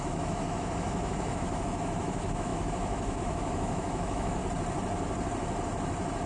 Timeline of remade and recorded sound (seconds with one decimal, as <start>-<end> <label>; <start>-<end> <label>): 0.0-4.4 remade; 4.4-6.3 recorded